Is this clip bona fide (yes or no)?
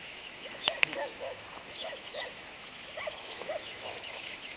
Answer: no